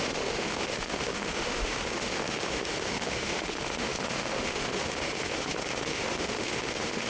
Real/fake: fake